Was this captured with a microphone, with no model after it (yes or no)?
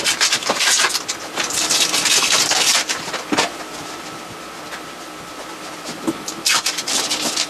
no